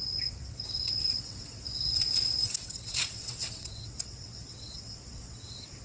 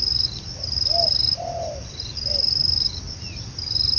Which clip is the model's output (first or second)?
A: first